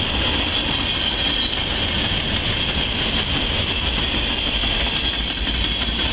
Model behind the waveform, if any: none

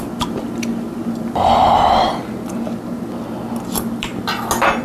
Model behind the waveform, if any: none